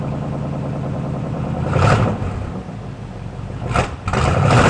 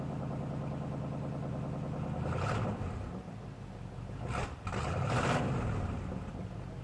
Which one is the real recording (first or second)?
second